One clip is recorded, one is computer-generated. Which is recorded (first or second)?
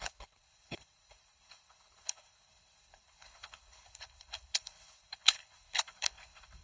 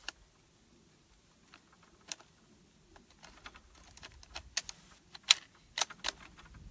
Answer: second